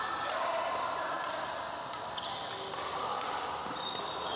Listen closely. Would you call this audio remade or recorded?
recorded